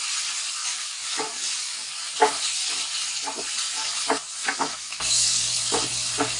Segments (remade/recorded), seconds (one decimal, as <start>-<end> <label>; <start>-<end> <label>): 0.0-0.6 recorded; 0.6-2.0 remade; 2.0-4.4 recorded; 4.4-5.6 remade; 5.6-6.4 recorded